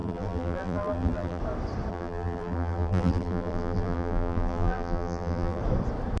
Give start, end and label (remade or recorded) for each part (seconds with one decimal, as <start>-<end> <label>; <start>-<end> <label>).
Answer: 0.0-1.4 remade; 1.4-1.9 recorded; 1.9-5.6 remade; 5.6-6.2 recorded